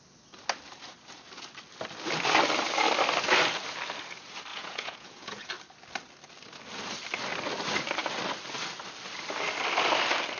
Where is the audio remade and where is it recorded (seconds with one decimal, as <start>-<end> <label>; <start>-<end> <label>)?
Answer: 0.0-4.5 recorded; 4.5-5.5 remade; 5.5-10.4 recorded